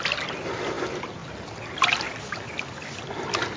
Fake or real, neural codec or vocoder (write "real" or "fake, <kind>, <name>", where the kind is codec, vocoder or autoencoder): real